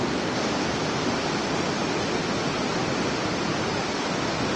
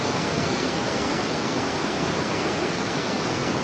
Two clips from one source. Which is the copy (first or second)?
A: second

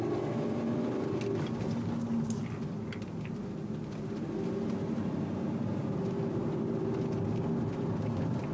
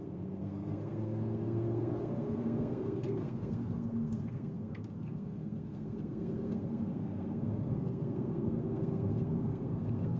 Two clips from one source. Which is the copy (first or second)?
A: second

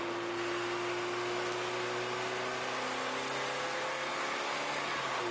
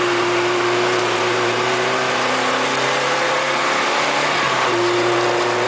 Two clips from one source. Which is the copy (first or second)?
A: second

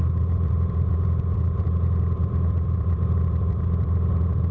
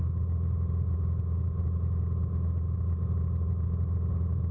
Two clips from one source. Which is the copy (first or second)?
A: first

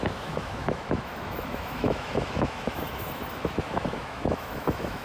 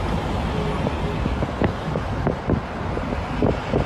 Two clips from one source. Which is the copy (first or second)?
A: first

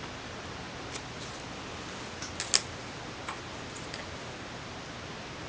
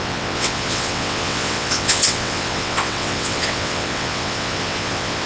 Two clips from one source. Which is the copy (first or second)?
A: second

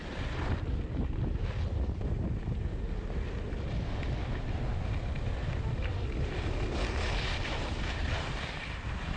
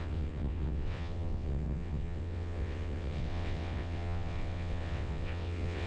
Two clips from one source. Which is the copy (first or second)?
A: second